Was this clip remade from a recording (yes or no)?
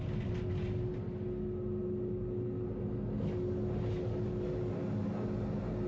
no